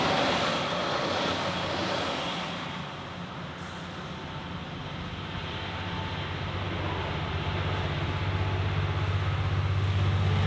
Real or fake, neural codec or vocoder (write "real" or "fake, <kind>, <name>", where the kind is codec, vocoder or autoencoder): real